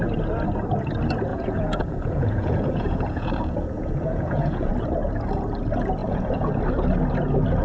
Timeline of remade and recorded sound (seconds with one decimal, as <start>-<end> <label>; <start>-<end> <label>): 0.0-1.3 recorded; 1.3-4.7 remade; 4.7-6.0 recorded; 6.0-6.5 remade; 6.5-7.6 recorded